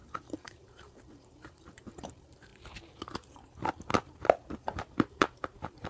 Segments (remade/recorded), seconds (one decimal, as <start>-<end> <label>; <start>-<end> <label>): 0.0-2.5 remade; 2.5-4.5 recorded; 4.5-5.9 remade